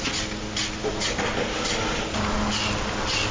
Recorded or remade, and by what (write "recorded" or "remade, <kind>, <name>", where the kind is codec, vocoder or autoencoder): recorded